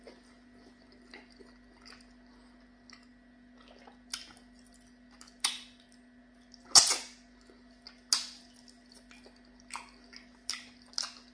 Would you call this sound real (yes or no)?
yes